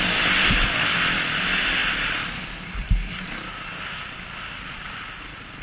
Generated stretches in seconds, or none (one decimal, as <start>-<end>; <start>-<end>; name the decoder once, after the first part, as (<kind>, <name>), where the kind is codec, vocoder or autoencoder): none